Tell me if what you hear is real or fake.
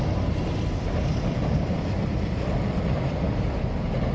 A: real